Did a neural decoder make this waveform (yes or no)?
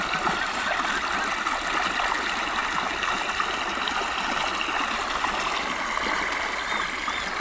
no